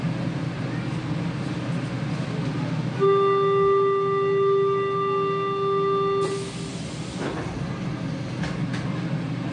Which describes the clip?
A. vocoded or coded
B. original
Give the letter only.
B